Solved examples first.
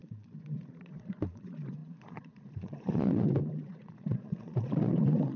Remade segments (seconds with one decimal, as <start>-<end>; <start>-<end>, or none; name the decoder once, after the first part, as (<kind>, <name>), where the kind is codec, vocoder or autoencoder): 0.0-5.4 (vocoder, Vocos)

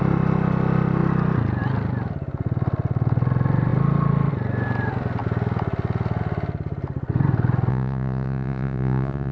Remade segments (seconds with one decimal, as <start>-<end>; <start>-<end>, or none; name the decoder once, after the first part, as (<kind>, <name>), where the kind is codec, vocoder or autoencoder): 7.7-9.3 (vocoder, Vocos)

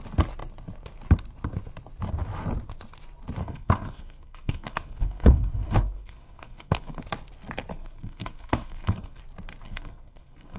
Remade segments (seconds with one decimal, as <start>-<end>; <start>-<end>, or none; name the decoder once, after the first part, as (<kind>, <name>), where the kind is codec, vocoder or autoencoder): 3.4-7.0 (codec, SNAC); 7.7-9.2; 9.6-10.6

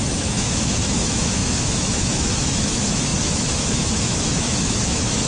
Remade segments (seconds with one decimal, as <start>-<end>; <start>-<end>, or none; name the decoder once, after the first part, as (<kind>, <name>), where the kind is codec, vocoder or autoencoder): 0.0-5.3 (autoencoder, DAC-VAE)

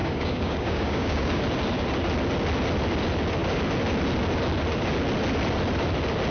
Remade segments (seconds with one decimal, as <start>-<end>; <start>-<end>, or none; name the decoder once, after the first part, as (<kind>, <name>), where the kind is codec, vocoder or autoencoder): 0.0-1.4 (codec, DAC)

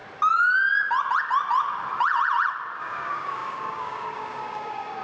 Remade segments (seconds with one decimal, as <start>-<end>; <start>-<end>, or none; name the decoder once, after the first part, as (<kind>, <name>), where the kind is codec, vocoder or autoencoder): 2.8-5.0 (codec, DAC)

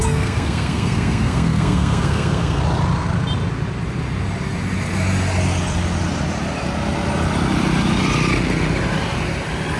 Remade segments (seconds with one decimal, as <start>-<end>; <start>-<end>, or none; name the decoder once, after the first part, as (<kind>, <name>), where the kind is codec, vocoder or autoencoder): 0.0-2.6 (codec, SNAC)